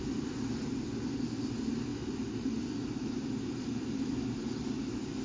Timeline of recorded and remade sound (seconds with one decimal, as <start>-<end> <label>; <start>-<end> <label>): 0.0-5.2 recorded

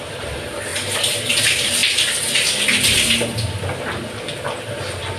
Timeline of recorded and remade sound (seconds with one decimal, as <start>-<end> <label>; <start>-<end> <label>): 0.0-0.7 remade; 0.7-1.4 recorded; 1.4-1.8 remade; 1.8-5.2 recorded

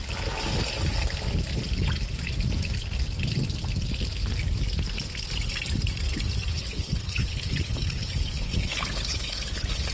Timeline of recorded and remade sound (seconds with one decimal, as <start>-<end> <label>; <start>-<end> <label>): 0.0-6.5 recorded; 6.5-9.9 remade

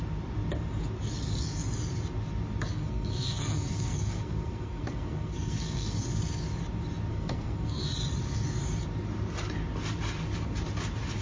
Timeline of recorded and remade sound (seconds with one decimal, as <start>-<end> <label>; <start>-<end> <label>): 0.0-2.7 recorded; 2.7-6.0 remade; 6.0-7.1 recorded; 7.1-7.8 remade; 7.8-11.2 recorded

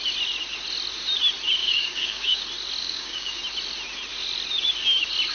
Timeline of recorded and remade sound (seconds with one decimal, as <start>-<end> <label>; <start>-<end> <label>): 0.0-1.6 recorded; 1.6-2.4 remade; 2.4-2.8 recorded; 2.8-3.4 remade; 3.4-5.3 recorded

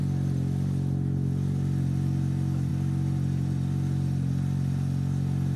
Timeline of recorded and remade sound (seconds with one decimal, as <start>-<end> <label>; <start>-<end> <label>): 0.0-5.6 recorded

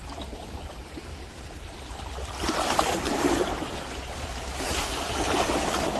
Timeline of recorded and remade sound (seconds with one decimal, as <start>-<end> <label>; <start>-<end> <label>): 0.0-1.1 recorded; 1.1-3.8 remade; 3.8-6.0 recorded

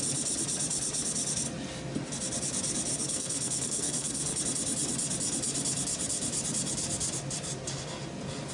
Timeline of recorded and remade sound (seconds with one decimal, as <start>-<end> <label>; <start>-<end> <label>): 0.0-2.9 recorded; 2.9-4.4 remade; 4.4-8.5 recorded